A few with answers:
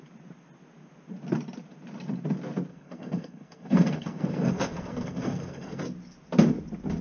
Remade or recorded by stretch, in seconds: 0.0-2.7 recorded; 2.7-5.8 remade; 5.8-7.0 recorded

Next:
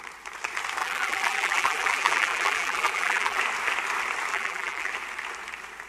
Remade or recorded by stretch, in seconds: 0.0-0.8 recorded; 0.8-3.4 remade; 3.4-4.3 recorded; 4.3-4.9 remade; 4.9-5.9 recorded